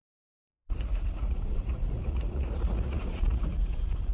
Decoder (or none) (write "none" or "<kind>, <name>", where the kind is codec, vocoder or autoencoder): vocoder, Vocos